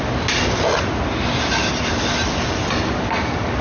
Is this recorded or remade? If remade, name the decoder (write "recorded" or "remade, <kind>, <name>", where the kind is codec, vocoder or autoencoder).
recorded